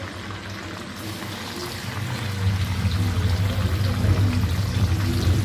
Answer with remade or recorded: recorded